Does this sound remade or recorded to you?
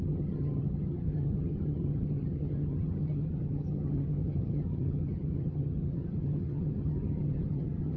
remade